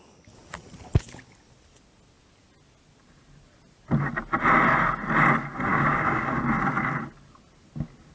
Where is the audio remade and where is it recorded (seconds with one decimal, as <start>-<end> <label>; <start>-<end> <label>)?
0.0-5.7 recorded; 5.7-6.4 remade; 6.4-8.1 recorded